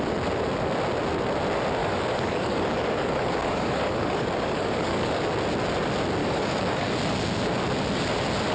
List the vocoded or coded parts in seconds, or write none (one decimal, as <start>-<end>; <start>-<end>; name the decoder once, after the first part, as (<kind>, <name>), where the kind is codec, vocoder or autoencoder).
1.8-5.2 (codec, DAC); 6.2-6.9